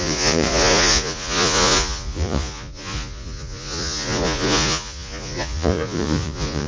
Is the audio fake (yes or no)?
yes